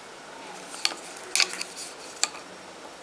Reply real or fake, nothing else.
real